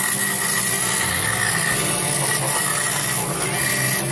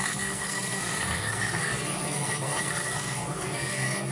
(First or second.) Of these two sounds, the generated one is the second